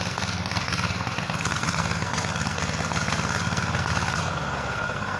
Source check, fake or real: fake